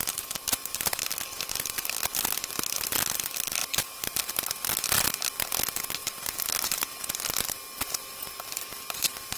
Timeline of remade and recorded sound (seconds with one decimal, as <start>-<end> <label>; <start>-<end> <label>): 0.0-3.6 recorded; 3.6-4.3 remade; 4.3-9.4 recorded